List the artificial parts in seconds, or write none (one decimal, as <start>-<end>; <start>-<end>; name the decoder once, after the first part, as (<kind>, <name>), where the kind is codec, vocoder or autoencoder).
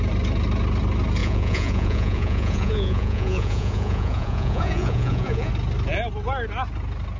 1.2-5.5 (vocoder, Vocos)